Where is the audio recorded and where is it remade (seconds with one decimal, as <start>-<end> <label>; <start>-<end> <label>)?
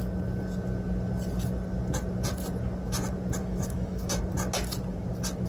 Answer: 0.0-3.4 recorded; 3.4-4.2 remade; 4.2-5.5 recorded